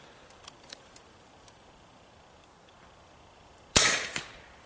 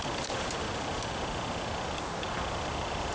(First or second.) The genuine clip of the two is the second